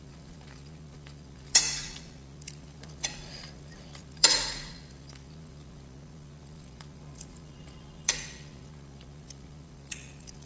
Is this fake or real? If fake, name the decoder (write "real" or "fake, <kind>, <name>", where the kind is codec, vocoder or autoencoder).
fake, vocoder, Vocos